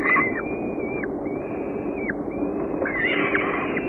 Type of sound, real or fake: real